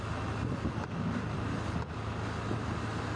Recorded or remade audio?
recorded